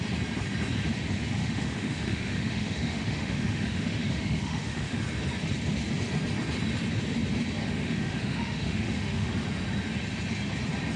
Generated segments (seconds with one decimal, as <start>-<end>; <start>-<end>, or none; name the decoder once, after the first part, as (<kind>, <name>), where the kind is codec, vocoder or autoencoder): 1.4-5.0 (autoencoder, DAC-VAE); 7.6-9.3